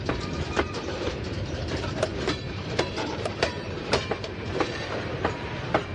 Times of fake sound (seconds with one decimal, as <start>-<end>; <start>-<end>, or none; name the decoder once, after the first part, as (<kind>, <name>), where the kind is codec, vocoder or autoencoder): 0.0-5.9 (vocoder, BigVGAN v2)